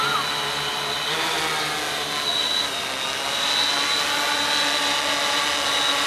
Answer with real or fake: real